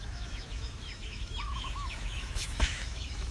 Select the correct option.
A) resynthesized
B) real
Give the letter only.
A